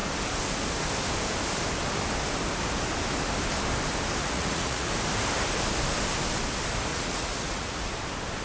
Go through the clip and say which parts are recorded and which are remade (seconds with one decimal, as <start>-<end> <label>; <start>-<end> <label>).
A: 0.0-4.2 recorded; 4.2-4.9 remade; 4.9-6.9 recorded; 6.9-7.9 remade; 7.9-8.4 recorded